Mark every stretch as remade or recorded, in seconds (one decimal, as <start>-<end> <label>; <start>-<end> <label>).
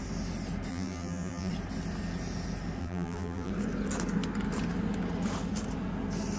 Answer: 0.0-0.7 recorded; 0.7-1.5 remade; 1.5-2.8 recorded; 2.8-3.5 remade; 3.5-6.4 recorded